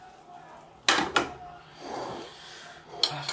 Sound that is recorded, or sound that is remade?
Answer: recorded